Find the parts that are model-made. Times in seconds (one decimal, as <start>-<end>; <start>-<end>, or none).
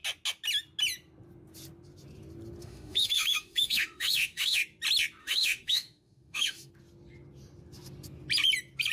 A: 2.6-4.6; 5.2-6.7